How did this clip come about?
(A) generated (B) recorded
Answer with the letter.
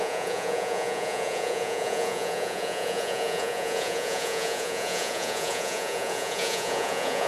A